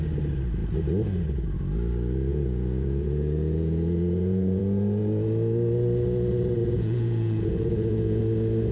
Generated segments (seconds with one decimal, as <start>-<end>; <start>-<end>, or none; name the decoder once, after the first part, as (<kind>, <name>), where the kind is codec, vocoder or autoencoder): 2.3-4.6 (vocoder, Vocos); 6.6-8.2